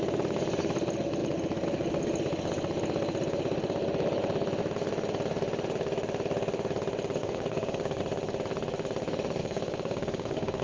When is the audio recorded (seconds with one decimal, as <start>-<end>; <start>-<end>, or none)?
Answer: 0.0-7.2; 8.0-9.4